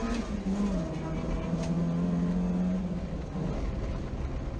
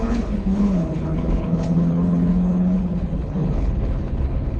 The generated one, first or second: second